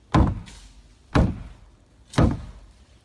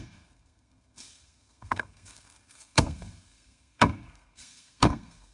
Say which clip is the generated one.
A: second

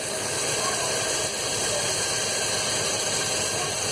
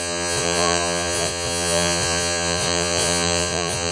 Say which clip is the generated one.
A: second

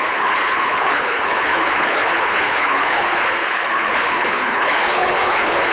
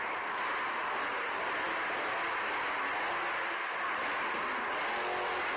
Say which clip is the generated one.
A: first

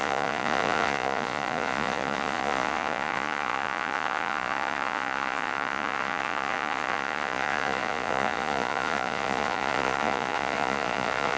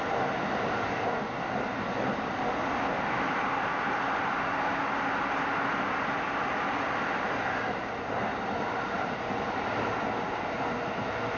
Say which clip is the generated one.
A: first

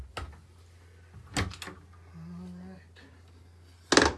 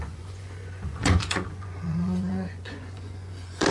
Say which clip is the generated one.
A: second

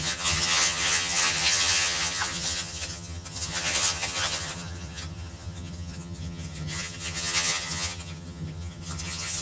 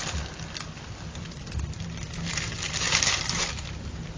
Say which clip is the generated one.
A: first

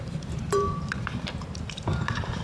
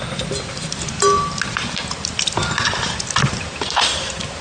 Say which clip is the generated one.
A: first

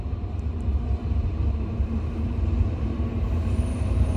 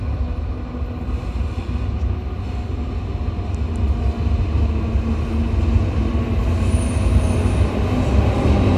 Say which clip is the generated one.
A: first